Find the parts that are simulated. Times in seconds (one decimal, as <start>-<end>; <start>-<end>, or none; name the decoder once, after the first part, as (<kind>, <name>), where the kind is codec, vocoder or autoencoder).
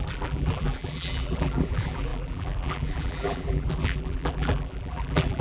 0.0-5.4 (vocoder, BigVGAN v2)